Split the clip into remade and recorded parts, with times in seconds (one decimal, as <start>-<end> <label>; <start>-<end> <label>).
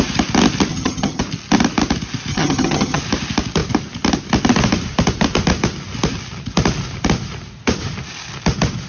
0.0-0.7 recorded; 0.7-1.2 remade; 1.2-2.3 recorded; 2.3-3.0 remade; 3.0-8.9 recorded